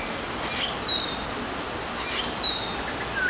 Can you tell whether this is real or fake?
real